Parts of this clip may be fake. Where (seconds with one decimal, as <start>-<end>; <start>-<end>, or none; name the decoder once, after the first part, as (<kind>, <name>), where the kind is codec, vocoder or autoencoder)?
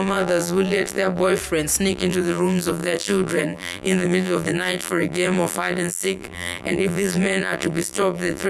0.0-1.4 (vocoder, BigVGAN v2); 1.9-8.5